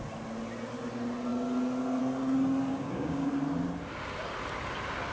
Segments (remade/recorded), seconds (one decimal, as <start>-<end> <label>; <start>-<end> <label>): 0.0-2.7 recorded; 2.7-3.3 remade; 3.3-5.1 recorded